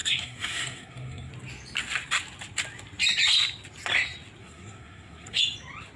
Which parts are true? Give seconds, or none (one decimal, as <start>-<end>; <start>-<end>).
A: 1.3-4.4; 5.4-6.0